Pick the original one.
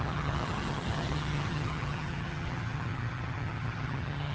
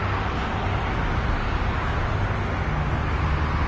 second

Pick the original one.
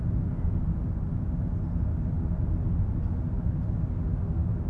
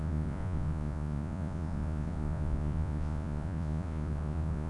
first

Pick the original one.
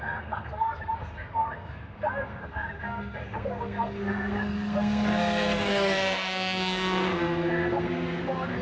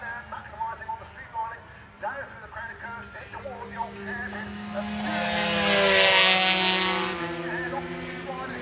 second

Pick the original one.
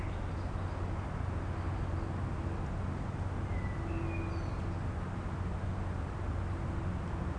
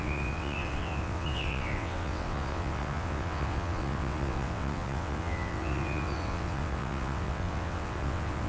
first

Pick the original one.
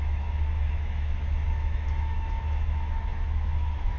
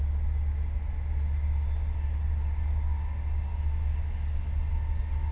second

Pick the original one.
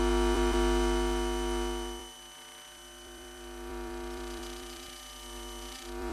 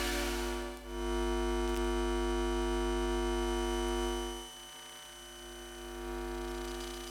second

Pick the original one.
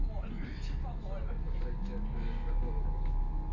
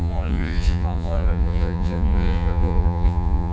first